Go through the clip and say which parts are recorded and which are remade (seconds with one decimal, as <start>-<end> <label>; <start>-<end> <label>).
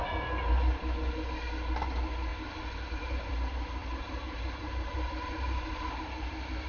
0.0-3.8 recorded; 3.8-6.0 remade; 6.0-6.7 recorded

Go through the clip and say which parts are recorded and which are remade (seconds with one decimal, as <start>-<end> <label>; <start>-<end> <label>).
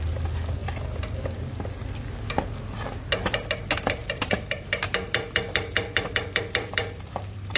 0.0-4.0 recorded; 4.0-7.6 remade